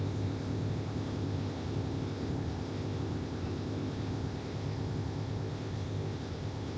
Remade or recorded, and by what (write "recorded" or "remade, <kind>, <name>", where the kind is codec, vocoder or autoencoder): remade, codec, ZipCodec